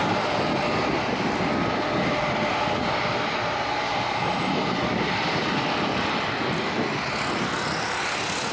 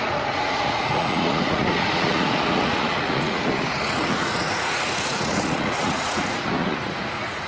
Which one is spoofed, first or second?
second